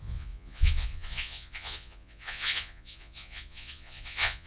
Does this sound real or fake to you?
fake